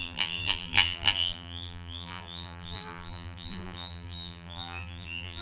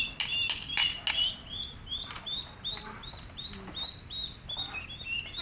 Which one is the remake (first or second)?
first